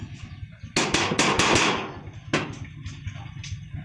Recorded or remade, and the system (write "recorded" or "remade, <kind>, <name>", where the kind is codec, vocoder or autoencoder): recorded